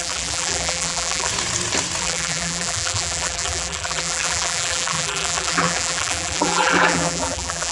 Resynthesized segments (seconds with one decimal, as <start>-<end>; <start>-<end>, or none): 0.0-1.3; 2.0-7.7